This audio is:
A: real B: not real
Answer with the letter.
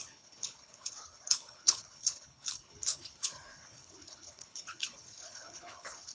B